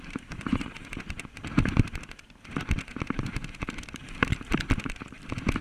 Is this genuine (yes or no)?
no